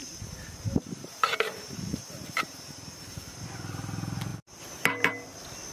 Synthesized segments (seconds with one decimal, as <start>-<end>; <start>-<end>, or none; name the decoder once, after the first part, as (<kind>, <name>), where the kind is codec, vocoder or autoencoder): 0.0-3.4 (vocoder, BigVGAN v2)